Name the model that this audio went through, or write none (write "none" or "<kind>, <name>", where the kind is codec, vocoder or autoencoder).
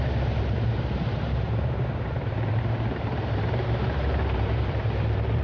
vocoder, BigVGAN v2